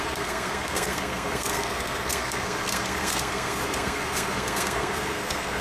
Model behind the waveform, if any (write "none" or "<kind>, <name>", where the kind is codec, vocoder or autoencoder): codec, SNAC